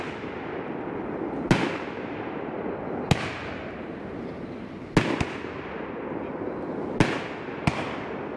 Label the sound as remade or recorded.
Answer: recorded